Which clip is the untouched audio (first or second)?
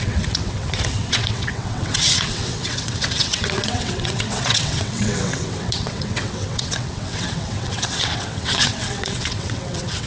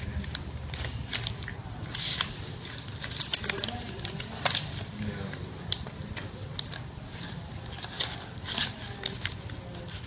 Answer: second